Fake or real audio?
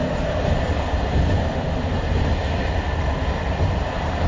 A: real